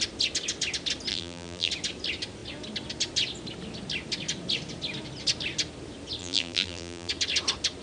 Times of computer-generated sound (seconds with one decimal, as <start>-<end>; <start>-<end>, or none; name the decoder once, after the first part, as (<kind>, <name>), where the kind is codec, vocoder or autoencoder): 1.1-1.7 (vocoder, BigVGAN v2); 6.2-7.1